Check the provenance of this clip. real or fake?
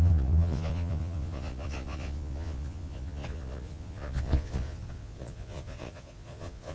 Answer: fake